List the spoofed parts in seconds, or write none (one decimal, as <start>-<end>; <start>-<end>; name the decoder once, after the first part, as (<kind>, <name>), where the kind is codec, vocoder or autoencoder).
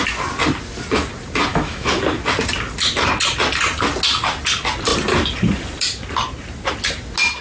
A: 1.5-2.0 (autoencoder, DAC-VAE)